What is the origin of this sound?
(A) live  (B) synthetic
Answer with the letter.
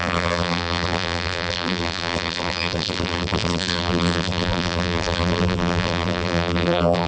B